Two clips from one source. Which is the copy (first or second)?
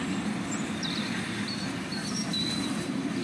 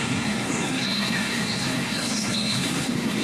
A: second